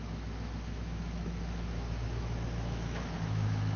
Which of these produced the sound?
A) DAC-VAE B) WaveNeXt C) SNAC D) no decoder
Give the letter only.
A